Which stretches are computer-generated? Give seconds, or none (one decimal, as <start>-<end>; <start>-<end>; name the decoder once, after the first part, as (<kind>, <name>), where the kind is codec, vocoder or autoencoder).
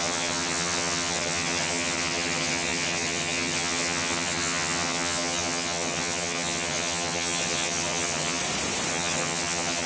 0.0-8.4 (vocoder, HiFi-GAN); 8.9-9.9